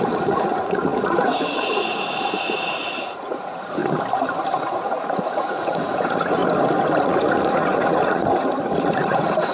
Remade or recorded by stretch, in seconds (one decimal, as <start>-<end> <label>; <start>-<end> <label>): 0.0-3.8 remade; 3.8-4.6 recorded; 4.6-6.4 remade; 6.4-7.0 recorded; 7.0-9.5 remade